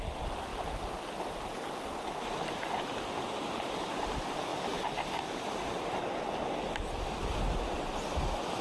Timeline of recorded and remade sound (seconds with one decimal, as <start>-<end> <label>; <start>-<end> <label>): 0.0-8.6 recorded